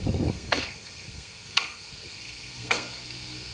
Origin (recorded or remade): remade